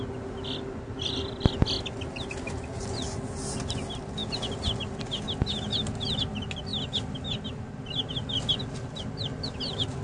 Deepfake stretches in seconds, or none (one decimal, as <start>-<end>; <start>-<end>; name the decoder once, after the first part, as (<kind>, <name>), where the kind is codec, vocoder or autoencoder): none